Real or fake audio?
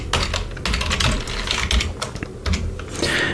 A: real